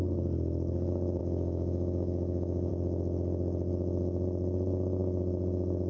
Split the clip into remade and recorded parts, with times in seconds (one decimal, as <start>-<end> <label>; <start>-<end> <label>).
0.0-1.2 recorded; 1.2-2.7 remade; 2.7-5.9 recorded